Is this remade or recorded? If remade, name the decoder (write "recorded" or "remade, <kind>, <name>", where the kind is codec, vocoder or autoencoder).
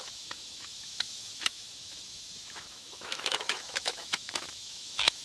remade, autoencoder, DAC-VAE